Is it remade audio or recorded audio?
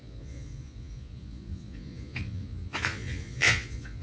remade